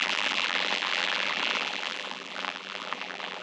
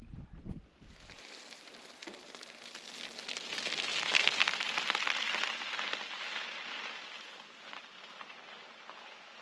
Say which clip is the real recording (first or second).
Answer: second